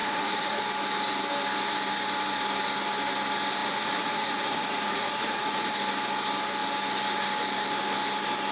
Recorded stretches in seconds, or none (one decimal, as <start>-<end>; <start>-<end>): 0.6-3.6; 5.7-8.5